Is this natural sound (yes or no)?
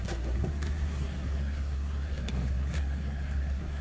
no